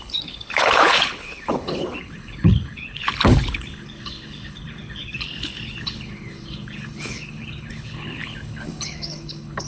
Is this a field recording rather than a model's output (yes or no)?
no